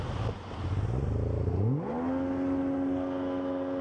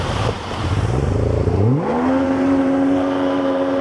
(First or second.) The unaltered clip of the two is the first